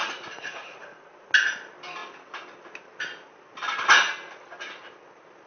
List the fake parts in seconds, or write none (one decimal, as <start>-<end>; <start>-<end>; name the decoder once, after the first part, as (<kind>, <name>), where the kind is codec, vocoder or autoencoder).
0.0-1.3 (vocoder, Vocos)